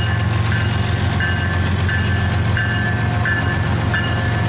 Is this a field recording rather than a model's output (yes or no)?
yes